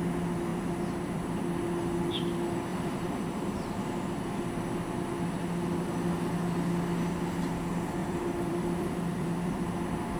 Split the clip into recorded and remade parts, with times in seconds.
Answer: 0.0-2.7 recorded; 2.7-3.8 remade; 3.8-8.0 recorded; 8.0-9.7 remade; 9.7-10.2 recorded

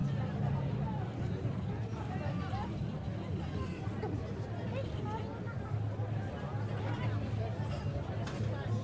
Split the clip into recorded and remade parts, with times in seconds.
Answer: 0.0-8.8 recorded

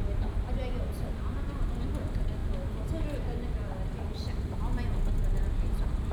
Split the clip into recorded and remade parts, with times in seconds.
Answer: 0.0-6.1 recorded